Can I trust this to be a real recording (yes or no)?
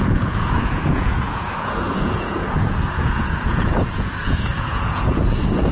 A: no